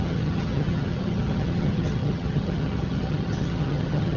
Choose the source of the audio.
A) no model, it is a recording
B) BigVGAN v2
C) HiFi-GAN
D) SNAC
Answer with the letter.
C